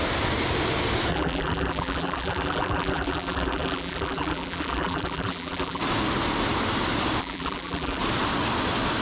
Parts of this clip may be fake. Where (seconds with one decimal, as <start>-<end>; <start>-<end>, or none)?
1.1-5.8; 7.2-8.0